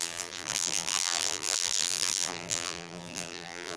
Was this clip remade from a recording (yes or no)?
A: yes